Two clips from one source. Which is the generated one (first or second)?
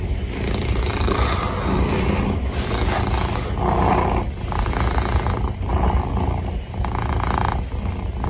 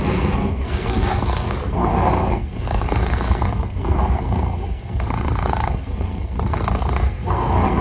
second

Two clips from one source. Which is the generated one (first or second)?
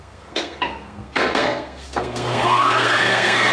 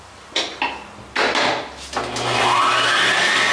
first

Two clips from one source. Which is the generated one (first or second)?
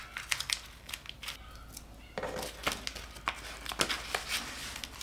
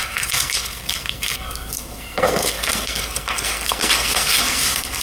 second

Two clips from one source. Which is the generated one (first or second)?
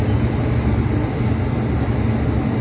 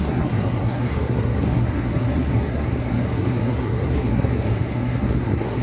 second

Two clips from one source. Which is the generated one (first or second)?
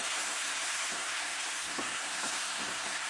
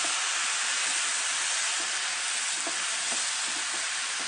first